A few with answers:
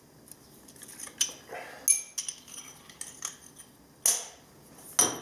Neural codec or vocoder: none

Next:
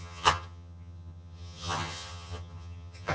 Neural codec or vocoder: vocoder, HiFi-GAN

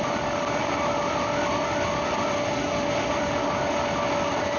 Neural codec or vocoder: none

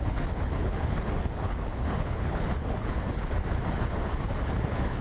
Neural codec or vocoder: codec, HILCodec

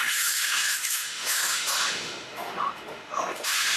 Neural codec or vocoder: autoencoder, DAC-VAE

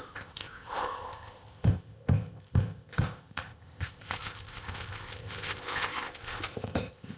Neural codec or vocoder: codec, ZipCodec